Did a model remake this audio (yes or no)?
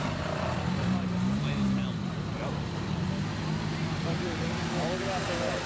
no